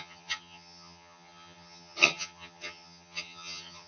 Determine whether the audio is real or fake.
fake